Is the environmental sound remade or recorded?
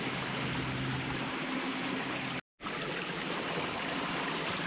recorded